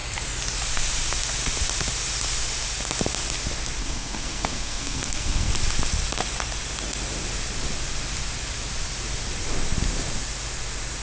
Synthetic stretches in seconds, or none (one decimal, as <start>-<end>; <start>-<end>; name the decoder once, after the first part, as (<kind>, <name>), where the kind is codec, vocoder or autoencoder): 3.8-5.5 (codec, SNAC)